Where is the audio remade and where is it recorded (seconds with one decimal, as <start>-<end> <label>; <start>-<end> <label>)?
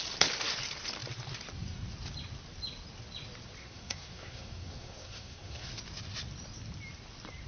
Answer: 0.0-3.6 recorded; 3.6-5.7 remade; 5.7-7.5 recorded